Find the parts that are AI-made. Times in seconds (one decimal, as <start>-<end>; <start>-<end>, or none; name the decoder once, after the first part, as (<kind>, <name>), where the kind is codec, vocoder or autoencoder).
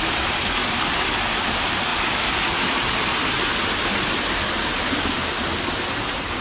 none